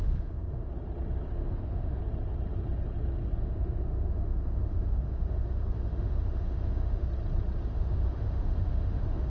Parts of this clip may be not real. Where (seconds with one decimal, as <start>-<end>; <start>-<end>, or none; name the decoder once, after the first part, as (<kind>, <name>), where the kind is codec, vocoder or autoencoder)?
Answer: 0.0-0.7 (autoencoder, DAC-VAE); 1.4-2.0; 3.4-7.1; 7.7-9.3